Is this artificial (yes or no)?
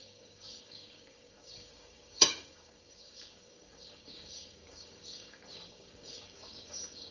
yes